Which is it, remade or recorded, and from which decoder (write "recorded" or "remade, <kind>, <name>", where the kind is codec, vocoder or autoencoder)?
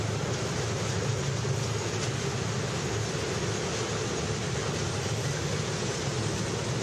recorded